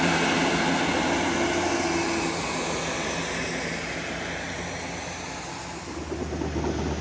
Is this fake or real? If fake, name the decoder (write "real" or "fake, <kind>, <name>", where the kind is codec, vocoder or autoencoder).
real